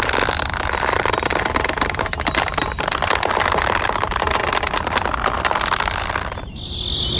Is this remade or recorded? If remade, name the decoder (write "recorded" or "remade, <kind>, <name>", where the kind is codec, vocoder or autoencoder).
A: recorded